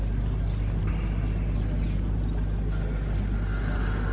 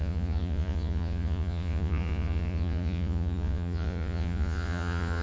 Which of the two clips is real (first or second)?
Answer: first